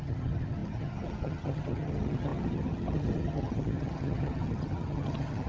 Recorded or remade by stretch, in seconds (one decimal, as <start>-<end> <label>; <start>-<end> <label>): 0.0-5.5 remade